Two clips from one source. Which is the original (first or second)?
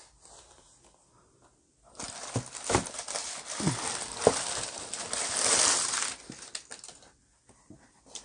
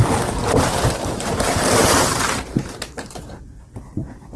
first